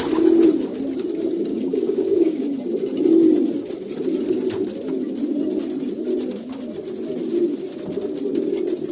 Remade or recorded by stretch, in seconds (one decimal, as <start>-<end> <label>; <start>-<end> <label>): 0.0-1.5 recorded; 1.5-2.5 remade; 2.5-8.9 recorded